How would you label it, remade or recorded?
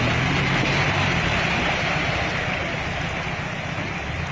recorded